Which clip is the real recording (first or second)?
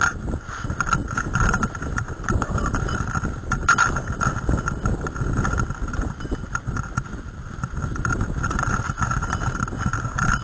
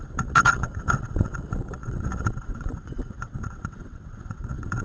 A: first